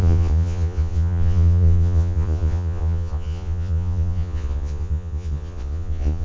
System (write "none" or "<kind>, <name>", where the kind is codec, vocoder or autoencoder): vocoder, Vocos